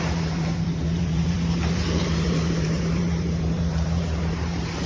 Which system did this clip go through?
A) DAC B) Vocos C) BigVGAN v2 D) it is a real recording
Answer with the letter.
C